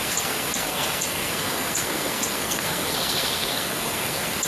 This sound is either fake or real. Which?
fake